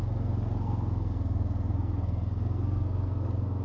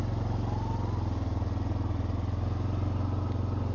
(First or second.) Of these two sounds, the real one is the second